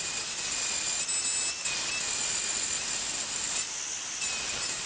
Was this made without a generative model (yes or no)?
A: yes